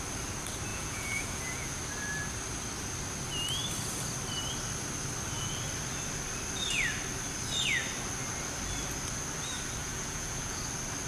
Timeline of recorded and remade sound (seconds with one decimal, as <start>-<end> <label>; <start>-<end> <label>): 0.0-0.7 recorded; 0.7-1.8 remade; 1.8-9.8 recorded; 9.8-10.6 remade; 10.6-11.1 recorded